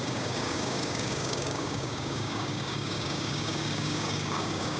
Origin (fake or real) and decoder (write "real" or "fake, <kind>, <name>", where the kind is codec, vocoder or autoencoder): fake, codec, DAC